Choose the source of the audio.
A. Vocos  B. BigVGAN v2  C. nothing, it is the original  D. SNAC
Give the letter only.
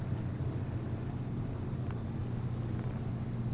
C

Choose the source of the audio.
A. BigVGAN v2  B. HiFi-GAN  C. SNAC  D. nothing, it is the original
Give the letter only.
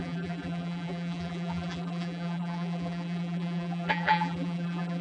A